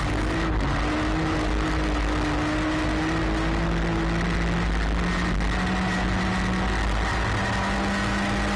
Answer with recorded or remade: recorded